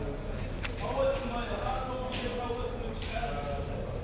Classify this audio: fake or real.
real